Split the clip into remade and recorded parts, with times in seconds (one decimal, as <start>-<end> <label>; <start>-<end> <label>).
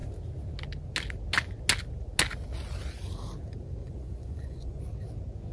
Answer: 0.0-3.8 recorded; 3.8-4.8 remade; 4.8-5.5 recorded